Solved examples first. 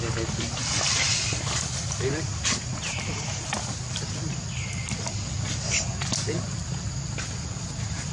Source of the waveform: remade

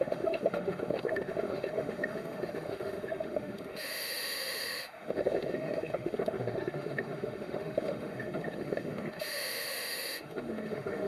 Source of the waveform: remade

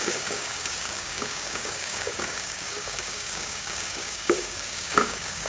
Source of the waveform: remade